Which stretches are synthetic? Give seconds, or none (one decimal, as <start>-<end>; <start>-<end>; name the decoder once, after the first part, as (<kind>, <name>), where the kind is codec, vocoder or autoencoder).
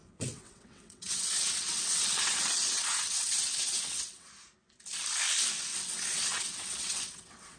0.0-4.3 (vocoder, WaveNeXt); 5.7-7.6